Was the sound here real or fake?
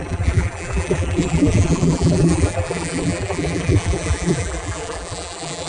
fake